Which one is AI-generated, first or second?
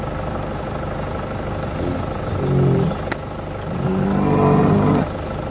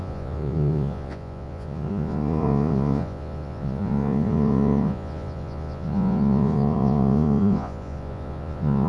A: second